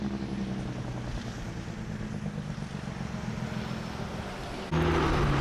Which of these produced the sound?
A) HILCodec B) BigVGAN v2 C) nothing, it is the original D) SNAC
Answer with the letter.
C